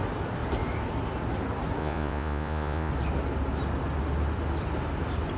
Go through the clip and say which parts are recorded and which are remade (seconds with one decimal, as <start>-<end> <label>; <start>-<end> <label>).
0.0-1.8 recorded; 1.8-2.9 remade; 2.9-5.4 recorded